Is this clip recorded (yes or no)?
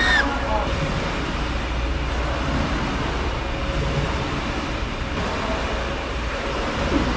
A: yes